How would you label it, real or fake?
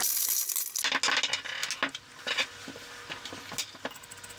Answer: real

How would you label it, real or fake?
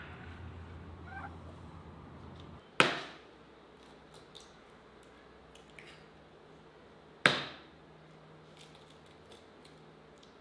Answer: real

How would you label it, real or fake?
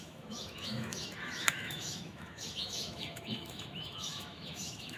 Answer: fake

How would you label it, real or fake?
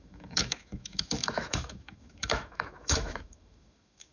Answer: fake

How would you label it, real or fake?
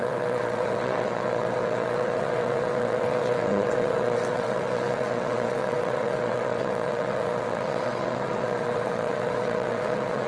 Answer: fake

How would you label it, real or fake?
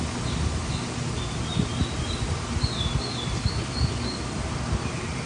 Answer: real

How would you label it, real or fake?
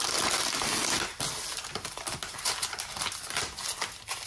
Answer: real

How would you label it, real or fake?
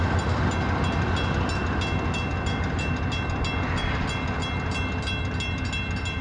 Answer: real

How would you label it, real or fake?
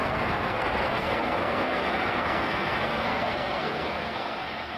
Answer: fake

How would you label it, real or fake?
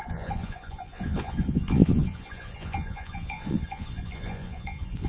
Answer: fake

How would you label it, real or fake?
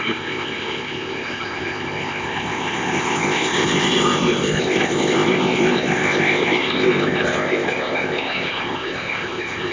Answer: fake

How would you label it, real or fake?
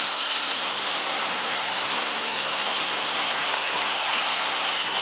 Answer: fake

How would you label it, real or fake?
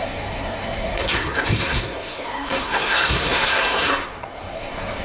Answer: fake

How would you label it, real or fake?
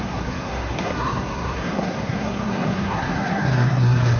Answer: fake